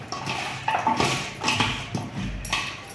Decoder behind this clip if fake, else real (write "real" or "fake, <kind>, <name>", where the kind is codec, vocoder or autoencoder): real